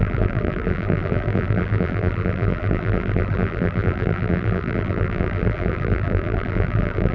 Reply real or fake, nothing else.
fake